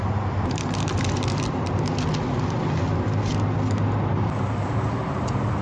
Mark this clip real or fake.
real